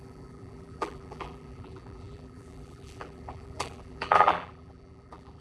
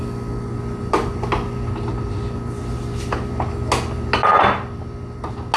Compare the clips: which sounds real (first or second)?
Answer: second